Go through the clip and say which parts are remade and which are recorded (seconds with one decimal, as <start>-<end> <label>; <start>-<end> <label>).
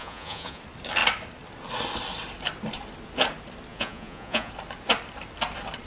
0.0-0.6 remade; 0.6-3.7 recorded; 3.7-4.5 remade; 4.5-5.9 recorded